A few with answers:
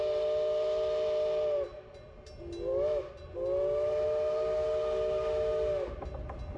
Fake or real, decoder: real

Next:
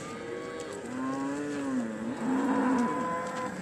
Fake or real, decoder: real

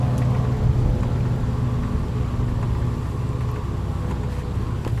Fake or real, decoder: real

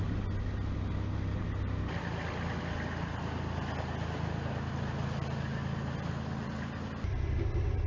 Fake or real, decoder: real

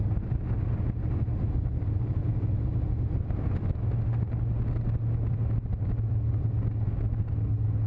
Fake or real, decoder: real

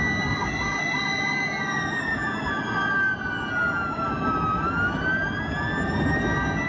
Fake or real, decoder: real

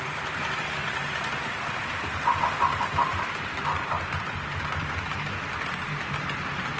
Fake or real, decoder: real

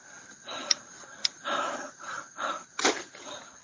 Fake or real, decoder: real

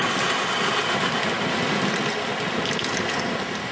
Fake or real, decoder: real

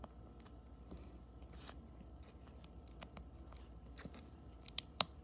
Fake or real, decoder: real